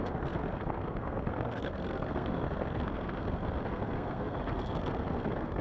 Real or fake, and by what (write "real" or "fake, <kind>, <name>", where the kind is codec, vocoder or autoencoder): fake, codec, SNAC